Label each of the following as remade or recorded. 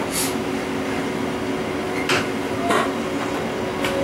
recorded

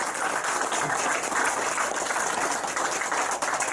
recorded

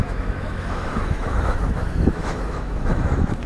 remade